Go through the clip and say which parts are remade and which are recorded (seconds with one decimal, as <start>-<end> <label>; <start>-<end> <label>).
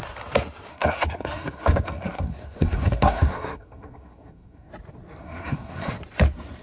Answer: 0.0-0.7 recorded; 0.7-4.7 remade; 4.7-5.2 recorded; 5.2-5.9 remade; 5.9-6.6 recorded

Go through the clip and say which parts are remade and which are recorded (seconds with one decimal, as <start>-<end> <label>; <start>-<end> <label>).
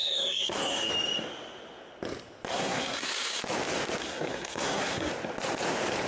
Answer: 0.0-0.9 remade; 0.9-2.5 recorded; 2.5-3.4 remade; 3.4-4.0 recorded; 4.0-5.1 remade; 5.1-6.1 recorded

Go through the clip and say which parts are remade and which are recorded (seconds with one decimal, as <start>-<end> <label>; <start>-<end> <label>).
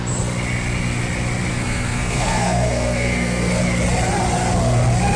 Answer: 0.0-1.5 recorded; 1.5-3.6 remade; 3.6-5.2 recorded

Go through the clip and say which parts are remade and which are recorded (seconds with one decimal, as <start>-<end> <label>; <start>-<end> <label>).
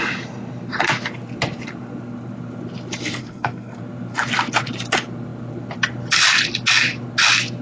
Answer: 0.0-3.2 recorded; 3.2-3.8 remade; 3.8-7.6 recorded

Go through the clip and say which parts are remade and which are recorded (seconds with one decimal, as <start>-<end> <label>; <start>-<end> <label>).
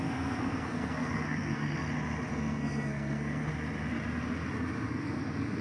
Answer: 0.0-1.8 remade; 1.8-2.3 recorded; 2.3-3.5 remade; 3.5-4.9 recorded; 4.9-5.6 remade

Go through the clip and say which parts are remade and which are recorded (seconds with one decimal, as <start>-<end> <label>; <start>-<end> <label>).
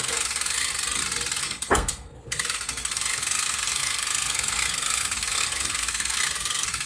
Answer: 0.0-0.7 remade; 0.7-1.4 recorded; 1.4-6.9 remade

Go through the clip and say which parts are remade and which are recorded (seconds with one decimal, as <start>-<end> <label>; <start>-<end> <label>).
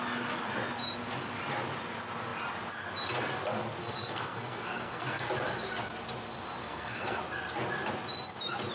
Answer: 0.0-3.8 recorded; 3.8-5.2 remade; 5.2-6.6 recorded; 6.6-7.2 remade; 7.2-8.7 recorded